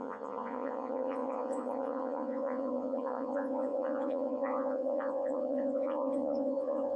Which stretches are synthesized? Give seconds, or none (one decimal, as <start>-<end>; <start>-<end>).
0.0-7.0